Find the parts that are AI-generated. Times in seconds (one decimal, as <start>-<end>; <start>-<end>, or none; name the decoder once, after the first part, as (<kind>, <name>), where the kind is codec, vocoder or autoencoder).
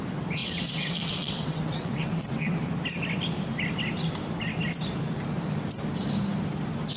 0.4-2.7 (vocoder, WaveNeXt)